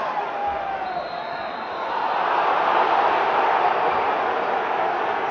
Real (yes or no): yes